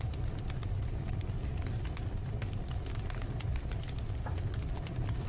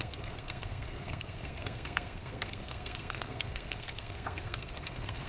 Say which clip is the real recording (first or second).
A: first